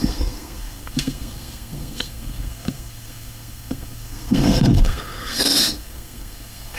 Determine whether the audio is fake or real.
fake